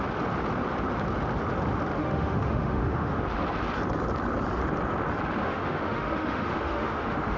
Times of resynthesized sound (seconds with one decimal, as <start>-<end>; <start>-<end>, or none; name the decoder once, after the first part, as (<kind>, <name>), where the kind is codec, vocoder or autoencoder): 2.0-3.2 (autoencoder, DAC-VAE); 5.4-7.4